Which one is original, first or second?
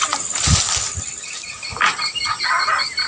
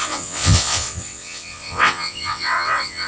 first